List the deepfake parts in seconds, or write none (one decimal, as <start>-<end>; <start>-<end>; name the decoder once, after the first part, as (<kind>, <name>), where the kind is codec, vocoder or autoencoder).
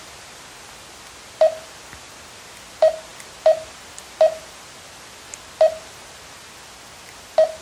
none